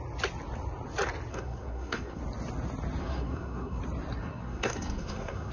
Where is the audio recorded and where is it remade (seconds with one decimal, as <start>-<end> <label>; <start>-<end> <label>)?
0.0-1.3 recorded; 1.3-2.2 remade; 2.2-3.0 recorded; 3.0-3.8 remade; 3.8-4.2 recorded; 4.2-5.5 remade